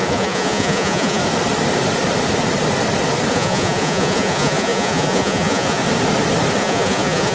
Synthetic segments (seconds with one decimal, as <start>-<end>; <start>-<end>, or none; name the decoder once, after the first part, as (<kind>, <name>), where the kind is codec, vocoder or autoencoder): 0.0-1.2 (vocoder, Vocos); 3.3-5.8; 6.6-7.3